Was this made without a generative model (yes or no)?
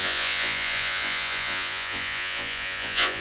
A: no